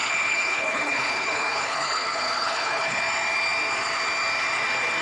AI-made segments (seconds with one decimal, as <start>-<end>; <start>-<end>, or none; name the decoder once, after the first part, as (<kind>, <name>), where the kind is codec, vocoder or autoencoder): 0.0-3.0 (codec, HILCodec)